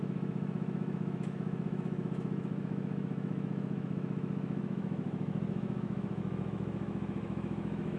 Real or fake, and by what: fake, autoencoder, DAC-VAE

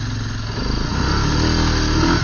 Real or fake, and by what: real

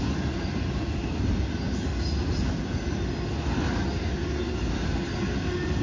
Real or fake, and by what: real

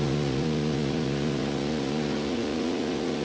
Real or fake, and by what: fake, vocoder, Vocos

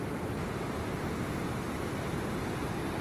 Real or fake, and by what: real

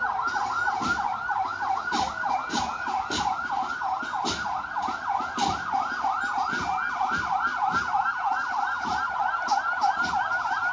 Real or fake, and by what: real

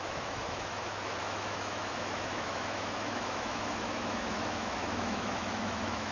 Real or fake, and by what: fake, autoencoder, DAC-VAE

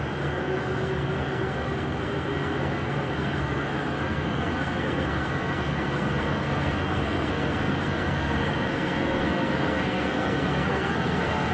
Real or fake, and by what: fake, codec, SNAC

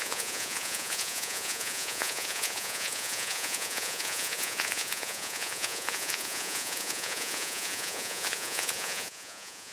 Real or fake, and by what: fake, vocoder, Vocos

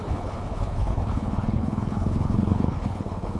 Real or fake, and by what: fake, codec, HILCodec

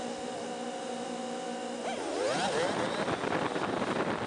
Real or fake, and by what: real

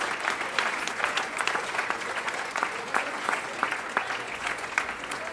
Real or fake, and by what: fake, vocoder, Vocos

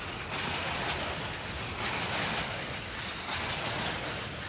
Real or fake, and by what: real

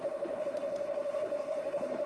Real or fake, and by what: fake, codec, SNAC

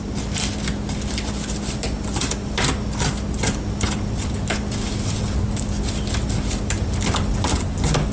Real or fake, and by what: real